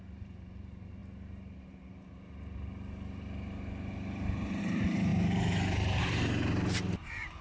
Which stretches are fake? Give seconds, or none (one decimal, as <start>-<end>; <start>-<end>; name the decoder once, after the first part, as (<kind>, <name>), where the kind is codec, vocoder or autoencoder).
0.0-1.0 (vocoder, BigVGAN v2); 4.6-7.4